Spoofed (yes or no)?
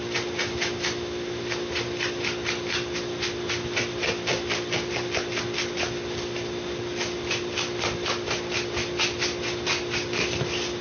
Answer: no